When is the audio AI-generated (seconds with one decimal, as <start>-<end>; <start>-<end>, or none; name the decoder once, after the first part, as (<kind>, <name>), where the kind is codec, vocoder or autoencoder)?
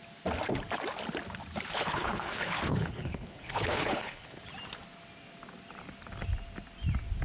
1.7-4.4 (codec, HILCodec)